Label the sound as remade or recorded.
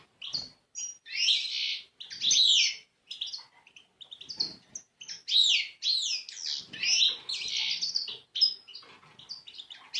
recorded